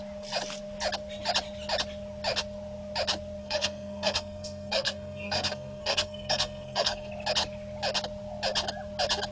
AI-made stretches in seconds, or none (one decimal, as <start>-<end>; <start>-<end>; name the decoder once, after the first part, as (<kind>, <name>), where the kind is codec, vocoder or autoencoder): 3.4-7.1 (codec, SNAC)